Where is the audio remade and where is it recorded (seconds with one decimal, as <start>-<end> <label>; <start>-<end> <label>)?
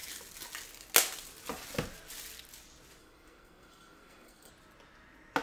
0.0-3.0 recorded; 3.0-4.5 remade; 4.5-5.4 recorded